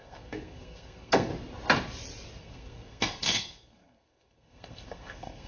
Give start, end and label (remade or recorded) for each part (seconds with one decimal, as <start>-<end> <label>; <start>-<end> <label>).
0.0-1.3 remade; 1.3-2.4 recorded; 2.4-5.5 remade